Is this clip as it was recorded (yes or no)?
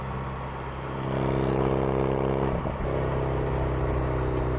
yes